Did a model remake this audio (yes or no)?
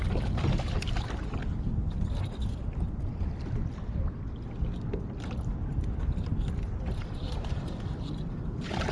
no